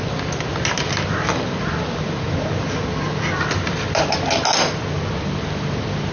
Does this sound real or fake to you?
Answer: real